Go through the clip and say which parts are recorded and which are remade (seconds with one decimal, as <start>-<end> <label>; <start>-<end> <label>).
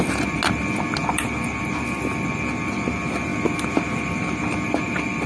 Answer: 0.0-5.3 recorded